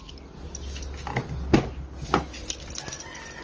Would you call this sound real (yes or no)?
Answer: yes